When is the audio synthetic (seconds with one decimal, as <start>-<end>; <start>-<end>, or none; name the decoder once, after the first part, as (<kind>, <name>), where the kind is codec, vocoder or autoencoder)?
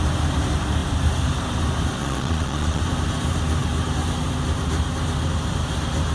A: 2.0-2.8 (vocoder, Vocos)